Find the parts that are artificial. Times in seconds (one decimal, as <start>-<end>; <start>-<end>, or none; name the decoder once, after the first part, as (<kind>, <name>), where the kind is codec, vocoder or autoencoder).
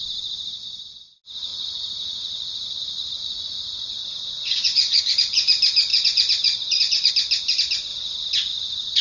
1.5-5.0 (vocoder, Vocos); 5.9-7.1; 7.9-9.0